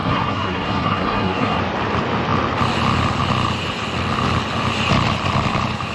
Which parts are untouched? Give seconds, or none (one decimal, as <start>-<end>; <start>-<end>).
1.6-5.9